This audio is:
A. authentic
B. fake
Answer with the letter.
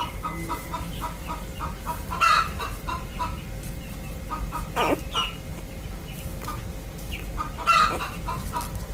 A